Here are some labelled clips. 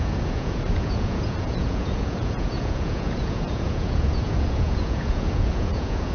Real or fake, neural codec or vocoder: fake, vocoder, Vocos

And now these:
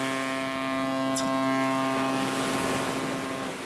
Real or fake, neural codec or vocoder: real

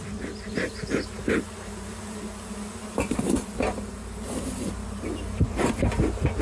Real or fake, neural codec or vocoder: real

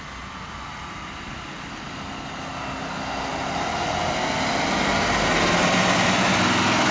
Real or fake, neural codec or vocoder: real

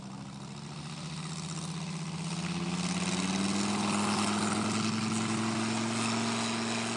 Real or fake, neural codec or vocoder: real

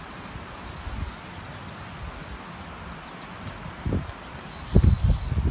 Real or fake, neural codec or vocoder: real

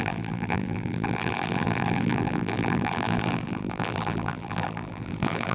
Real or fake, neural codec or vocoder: fake, vocoder, BigVGAN v2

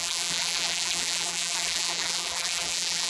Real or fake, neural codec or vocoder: fake, vocoder, BigVGAN v2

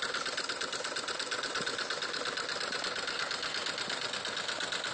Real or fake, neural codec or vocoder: real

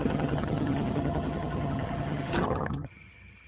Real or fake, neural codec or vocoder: fake, vocoder, HiFi-GAN